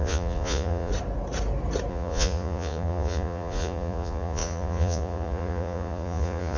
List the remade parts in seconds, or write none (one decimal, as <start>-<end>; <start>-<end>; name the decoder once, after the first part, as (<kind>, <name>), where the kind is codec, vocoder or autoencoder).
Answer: 0.0-0.9 (vocoder, Vocos); 1.9-6.6